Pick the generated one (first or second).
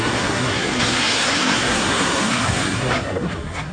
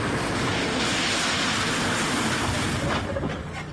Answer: first